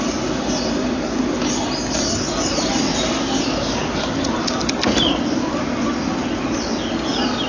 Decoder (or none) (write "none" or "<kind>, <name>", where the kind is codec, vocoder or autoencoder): none